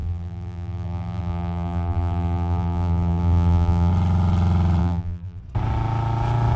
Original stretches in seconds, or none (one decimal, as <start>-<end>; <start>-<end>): 3.9-4.8; 5.4-6.6